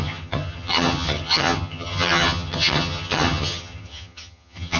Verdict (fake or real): fake